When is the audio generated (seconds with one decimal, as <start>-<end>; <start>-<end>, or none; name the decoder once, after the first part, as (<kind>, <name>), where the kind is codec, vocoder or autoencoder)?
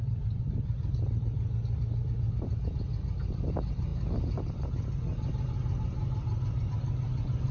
none